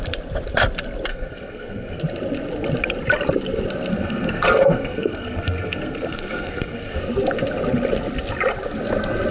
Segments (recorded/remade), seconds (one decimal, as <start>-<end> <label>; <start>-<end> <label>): 0.0-1.1 recorded; 1.1-2.0 remade; 2.0-3.9 recorded; 3.9-7.0 remade; 7.0-9.3 recorded